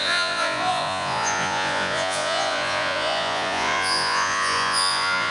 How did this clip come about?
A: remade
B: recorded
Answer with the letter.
A